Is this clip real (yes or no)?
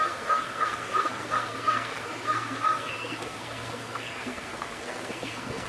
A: no